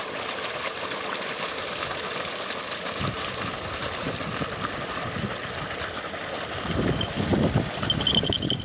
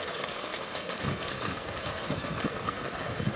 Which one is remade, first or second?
second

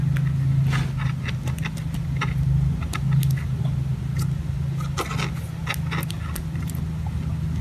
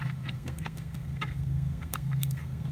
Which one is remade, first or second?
second